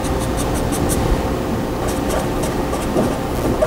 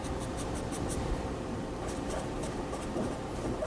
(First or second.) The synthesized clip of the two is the second